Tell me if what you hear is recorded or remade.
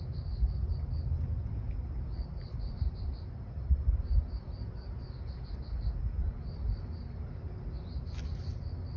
recorded